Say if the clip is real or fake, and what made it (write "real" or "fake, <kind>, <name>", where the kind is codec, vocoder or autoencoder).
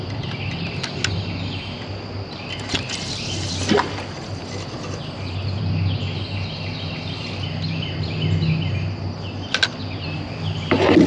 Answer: real